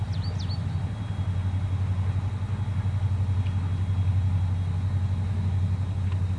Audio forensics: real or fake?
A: real